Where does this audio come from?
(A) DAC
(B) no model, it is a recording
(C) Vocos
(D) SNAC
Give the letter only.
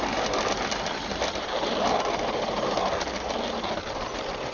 B